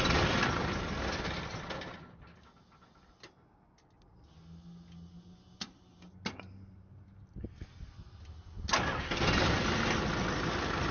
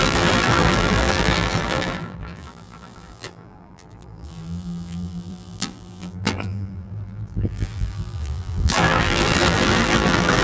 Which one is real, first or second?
first